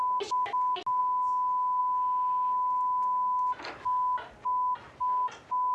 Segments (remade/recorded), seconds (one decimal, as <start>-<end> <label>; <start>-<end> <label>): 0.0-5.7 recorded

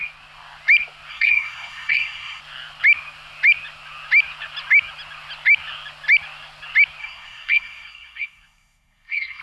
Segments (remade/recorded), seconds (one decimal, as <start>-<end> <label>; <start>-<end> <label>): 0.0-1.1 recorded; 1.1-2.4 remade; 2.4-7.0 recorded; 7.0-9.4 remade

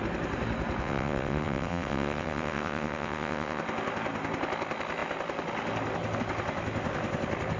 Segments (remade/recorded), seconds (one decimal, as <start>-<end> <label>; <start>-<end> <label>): 0.0-0.8 recorded; 0.8-3.6 remade; 3.6-7.6 recorded

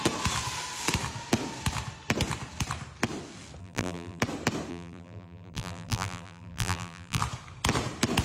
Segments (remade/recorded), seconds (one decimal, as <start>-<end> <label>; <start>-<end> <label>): 0.0-3.6 recorded; 3.6-4.2 remade; 4.2-4.7 recorded; 4.7-7.2 remade; 7.2-8.2 recorded

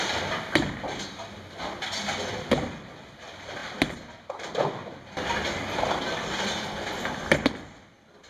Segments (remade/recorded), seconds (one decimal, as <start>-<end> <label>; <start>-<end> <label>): 0.0-8.3 recorded

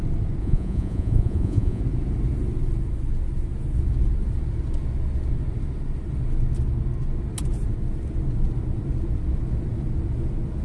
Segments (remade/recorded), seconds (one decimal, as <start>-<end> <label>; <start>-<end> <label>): 0.0-0.4 recorded; 0.4-1.8 remade; 1.8-10.6 recorded